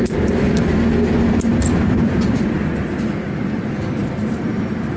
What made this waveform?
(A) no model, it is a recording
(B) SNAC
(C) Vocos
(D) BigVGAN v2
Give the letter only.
D